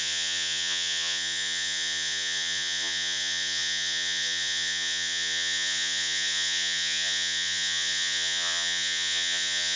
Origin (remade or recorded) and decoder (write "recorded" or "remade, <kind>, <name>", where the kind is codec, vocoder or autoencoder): remade, vocoder, Vocos